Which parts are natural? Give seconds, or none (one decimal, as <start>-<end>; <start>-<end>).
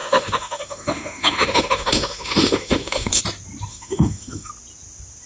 3.2-3.7; 4.5-5.3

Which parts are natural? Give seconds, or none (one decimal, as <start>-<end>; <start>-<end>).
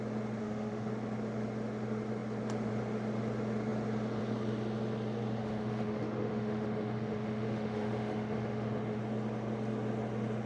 0.0-0.4; 0.9-5.4; 9.0-10.5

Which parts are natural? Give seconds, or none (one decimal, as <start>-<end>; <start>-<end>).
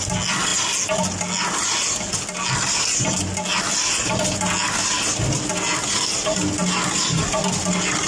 0.0-8.1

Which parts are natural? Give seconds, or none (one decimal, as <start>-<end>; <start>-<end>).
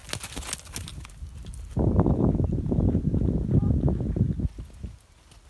0.0-5.5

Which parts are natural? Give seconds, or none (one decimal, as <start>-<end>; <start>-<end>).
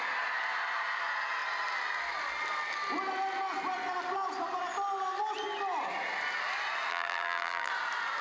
0.0-6.9; 7.7-8.2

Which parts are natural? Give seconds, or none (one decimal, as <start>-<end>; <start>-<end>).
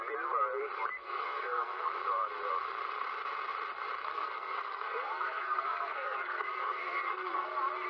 0.0-1.0; 1.9-4.0; 7.5-7.9